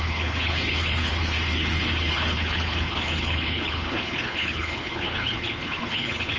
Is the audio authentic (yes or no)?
no